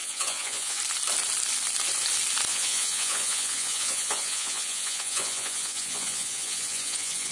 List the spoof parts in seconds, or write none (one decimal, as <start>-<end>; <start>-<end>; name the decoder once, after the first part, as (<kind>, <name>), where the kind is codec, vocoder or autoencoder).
0.0-0.8 (vocoder, Vocos); 2.5-7.3